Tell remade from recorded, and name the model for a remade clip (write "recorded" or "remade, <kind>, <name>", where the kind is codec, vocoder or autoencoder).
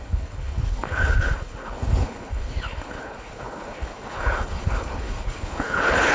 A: remade, codec, HILCodec